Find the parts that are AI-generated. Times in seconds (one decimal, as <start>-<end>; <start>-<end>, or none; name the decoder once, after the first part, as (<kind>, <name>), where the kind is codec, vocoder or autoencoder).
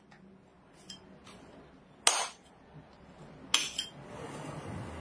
none